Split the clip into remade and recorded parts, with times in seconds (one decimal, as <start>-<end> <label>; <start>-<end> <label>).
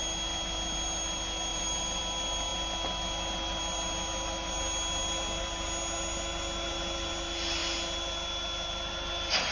0.0-1.5 recorded; 1.5-2.0 remade; 2.0-9.5 recorded